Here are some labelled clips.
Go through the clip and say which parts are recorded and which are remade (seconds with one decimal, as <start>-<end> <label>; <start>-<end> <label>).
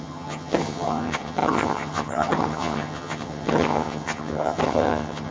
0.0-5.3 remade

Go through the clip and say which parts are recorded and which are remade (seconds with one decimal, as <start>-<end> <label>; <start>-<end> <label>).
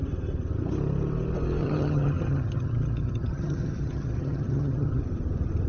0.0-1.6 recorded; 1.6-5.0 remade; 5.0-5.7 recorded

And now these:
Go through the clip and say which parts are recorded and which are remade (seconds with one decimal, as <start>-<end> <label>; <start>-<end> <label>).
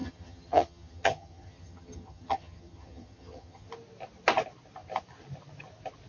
0.0-3.7 remade; 3.7-6.1 recorded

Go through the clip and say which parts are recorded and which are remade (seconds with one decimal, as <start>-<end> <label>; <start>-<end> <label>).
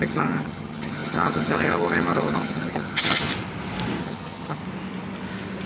0.0-3.3 remade; 3.3-4.0 recorded; 4.0-4.6 remade; 4.6-5.7 recorded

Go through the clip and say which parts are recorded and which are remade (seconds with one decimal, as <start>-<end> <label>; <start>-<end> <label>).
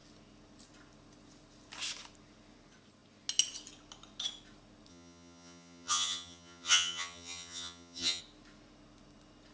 0.0-4.9 recorded; 4.9-8.2 remade; 8.2-9.5 recorded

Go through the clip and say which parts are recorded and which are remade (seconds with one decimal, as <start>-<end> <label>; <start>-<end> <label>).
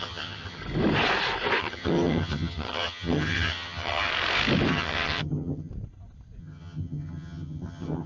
0.0-0.6 remade; 0.6-1.6 recorded; 1.6-4.1 remade; 4.1-4.7 recorded; 4.7-5.7 remade; 5.7-6.4 recorded; 6.4-8.1 remade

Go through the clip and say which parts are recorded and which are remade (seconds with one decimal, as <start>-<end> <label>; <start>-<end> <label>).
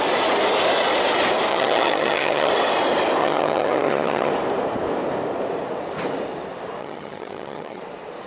0.0-1.5 recorded; 1.5-2.5 remade; 2.5-3.2 recorded; 3.2-4.3 remade; 4.3-6.8 recorded; 6.8-7.8 remade; 7.8-8.3 recorded